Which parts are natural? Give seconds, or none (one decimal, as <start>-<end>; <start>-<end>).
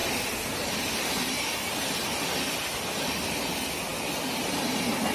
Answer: 0.0-5.1